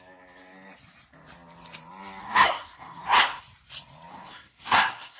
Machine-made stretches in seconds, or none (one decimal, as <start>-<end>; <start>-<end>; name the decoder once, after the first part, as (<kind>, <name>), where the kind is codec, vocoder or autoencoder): 2.2-3.4 (codec, SNAC); 4.1-5.2